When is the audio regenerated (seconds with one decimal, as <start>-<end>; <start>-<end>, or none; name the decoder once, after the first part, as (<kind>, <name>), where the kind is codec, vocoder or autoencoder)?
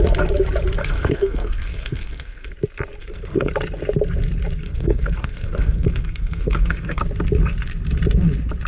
0.8-2.5 (codec, SNAC); 3.0-3.5; 4.6-7.0